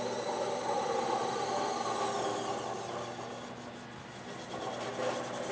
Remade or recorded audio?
recorded